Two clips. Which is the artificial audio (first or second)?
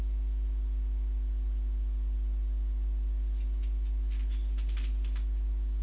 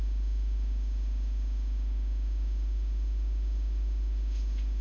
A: second